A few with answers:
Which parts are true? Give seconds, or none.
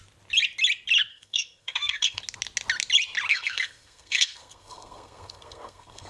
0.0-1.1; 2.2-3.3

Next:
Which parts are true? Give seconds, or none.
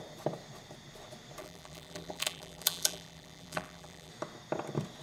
0.0-1.4; 4.1-5.0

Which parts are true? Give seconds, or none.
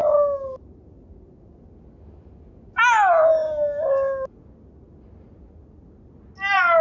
0.0-6.8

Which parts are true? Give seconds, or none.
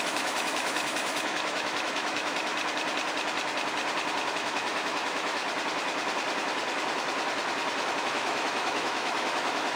2.5-4.3; 5.4-8.0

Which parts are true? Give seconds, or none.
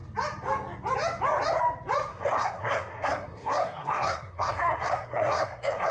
0.0-2.1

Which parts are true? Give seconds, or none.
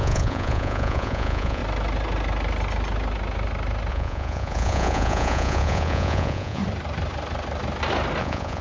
1.6-3.9; 6.6-8.2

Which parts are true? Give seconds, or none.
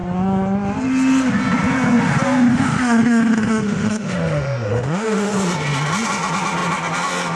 0.0-2.5; 5.3-7.4